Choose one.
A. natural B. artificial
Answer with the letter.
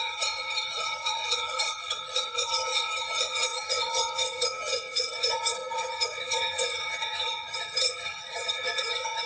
B